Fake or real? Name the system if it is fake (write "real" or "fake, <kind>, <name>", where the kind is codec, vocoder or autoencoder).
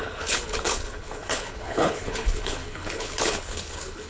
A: fake, codec, HILCodec